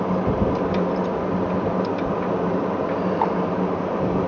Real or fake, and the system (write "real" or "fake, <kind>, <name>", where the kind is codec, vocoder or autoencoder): real